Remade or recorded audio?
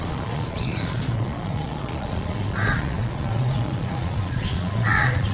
remade